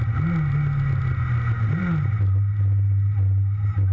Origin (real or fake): real